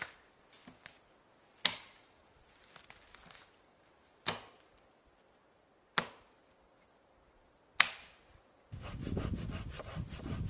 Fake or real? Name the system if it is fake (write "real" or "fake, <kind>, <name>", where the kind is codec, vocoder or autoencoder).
real